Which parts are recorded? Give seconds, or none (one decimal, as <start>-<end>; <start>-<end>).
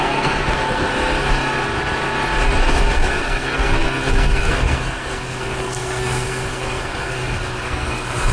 0.9-2.7